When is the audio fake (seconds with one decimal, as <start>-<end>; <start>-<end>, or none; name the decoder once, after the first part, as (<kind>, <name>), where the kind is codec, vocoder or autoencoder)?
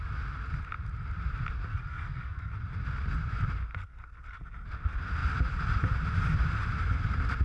1.7-2.5 (codec, SNAC); 3.7-4.4